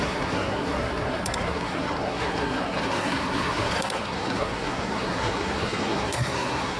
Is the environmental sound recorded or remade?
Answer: remade